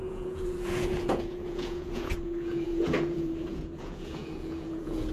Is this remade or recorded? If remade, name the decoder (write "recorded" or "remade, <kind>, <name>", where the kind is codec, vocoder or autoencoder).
remade, vocoder, Vocos